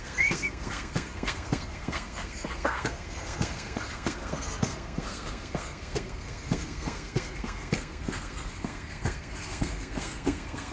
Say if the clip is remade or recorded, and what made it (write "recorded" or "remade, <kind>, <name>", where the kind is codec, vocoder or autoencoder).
remade, codec, SNAC